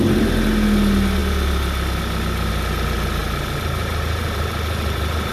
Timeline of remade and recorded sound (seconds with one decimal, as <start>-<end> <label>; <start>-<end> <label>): 0.0-3.2 recorded; 3.2-5.3 remade